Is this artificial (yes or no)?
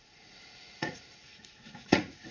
yes